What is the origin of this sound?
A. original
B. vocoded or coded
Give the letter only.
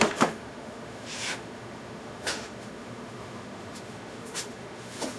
B